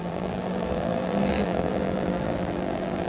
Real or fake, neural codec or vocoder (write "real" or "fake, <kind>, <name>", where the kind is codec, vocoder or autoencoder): fake, vocoder, BigVGAN v2